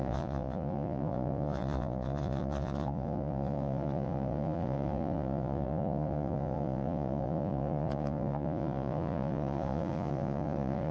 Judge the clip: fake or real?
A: fake